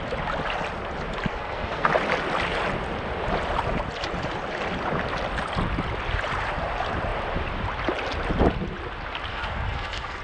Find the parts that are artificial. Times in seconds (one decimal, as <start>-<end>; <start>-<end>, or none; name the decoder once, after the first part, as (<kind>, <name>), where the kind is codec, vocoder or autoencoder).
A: 1.3-1.9 (codec, SNAC); 9.3-10.2